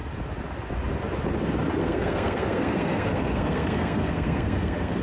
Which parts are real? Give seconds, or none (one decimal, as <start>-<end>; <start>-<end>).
0.0-1.8